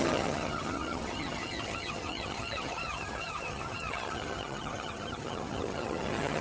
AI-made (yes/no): yes